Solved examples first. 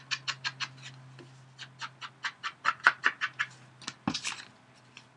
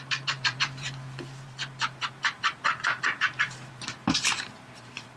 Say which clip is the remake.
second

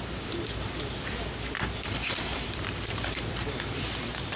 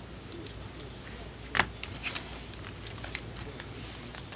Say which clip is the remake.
first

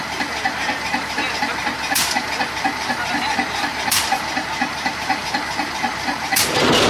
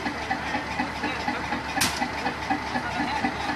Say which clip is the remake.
first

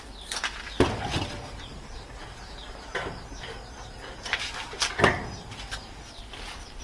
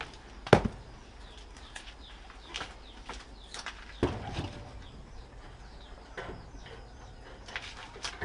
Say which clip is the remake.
first